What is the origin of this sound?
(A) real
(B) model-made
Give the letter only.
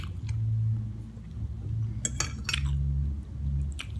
A